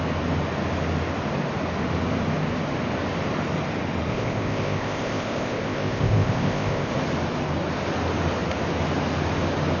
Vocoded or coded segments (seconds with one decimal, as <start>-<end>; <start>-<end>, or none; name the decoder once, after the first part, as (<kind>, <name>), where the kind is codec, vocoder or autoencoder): 4.1-6.9 (codec, ZipCodec)